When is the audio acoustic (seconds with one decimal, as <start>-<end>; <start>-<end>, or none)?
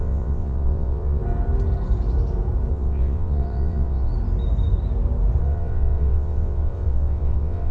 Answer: 1.2-2.7; 4.1-5.4